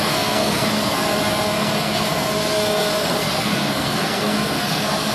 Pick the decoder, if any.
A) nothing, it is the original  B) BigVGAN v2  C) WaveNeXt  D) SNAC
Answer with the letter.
D